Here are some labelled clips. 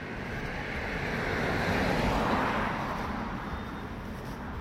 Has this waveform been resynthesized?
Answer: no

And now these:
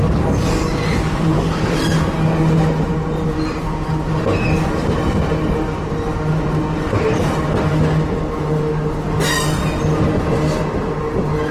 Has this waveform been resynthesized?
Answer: no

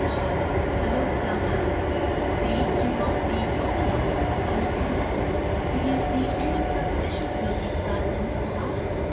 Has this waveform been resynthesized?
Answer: no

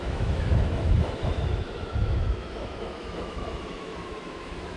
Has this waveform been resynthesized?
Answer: yes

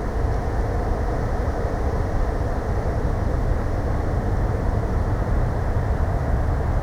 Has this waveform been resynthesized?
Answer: no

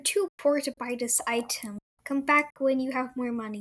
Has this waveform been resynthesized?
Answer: no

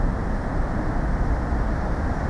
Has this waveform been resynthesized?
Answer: no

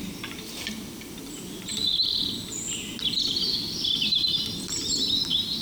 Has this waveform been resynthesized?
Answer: no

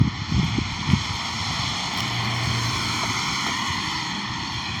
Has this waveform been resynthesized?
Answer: no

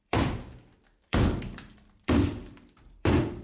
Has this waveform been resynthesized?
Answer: yes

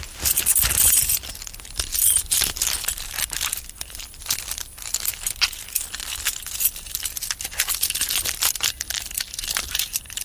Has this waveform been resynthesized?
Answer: no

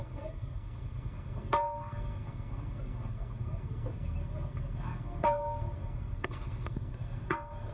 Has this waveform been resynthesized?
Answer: yes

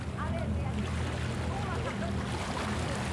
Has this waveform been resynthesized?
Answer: no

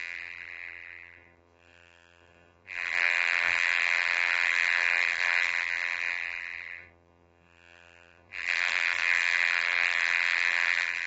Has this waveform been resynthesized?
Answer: yes